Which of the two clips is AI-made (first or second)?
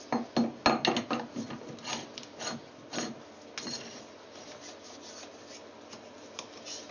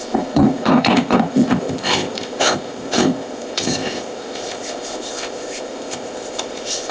second